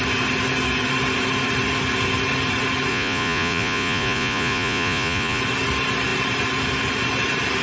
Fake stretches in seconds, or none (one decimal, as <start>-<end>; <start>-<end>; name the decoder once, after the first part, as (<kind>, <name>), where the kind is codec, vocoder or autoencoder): 2.9-5.4 (vocoder, Vocos)